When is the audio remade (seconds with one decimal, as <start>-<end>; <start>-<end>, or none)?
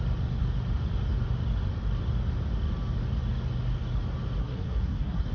4.4-5.3